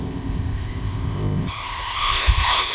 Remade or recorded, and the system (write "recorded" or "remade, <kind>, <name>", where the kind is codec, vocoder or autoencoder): remade, codec, ZipCodec